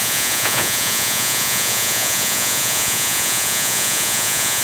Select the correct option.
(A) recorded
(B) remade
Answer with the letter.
B